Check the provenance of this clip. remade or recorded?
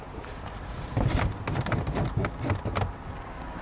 recorded